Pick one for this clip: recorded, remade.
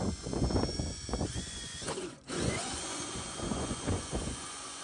remade